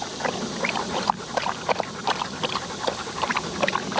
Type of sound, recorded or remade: recorded